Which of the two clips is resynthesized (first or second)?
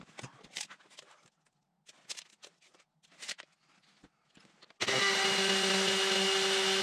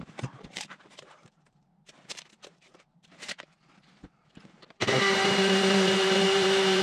second